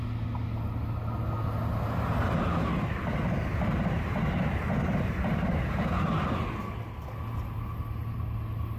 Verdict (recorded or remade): recorded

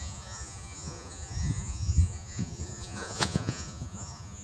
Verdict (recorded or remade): remade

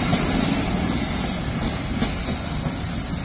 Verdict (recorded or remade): recorded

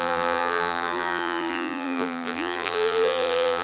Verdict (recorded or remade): remade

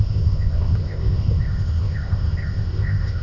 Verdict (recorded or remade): remade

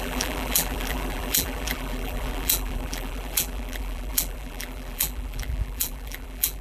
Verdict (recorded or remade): remade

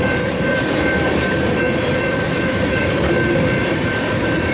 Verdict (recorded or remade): remade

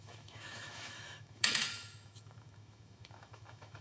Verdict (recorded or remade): remade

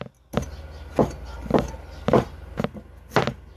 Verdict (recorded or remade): recorded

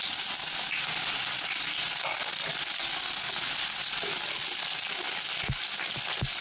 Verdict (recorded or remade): recorded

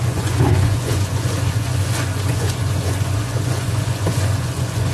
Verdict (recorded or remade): remade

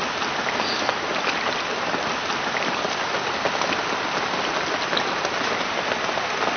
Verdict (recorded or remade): recorded